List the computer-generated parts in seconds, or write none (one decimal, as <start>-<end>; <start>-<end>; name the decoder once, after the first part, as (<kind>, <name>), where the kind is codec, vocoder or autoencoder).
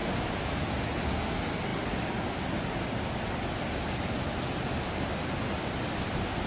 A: none